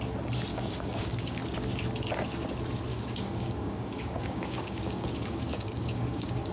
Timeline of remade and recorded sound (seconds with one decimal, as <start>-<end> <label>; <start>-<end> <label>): 0.0-0.5 recorded; 0.5-1.4 remade; 1.4-2.9 recorded; 2.9-6.5 remade